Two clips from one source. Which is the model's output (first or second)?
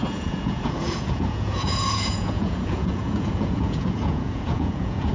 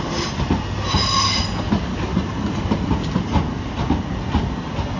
first